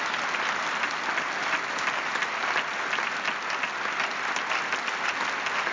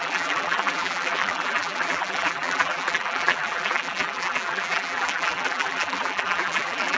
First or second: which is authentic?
first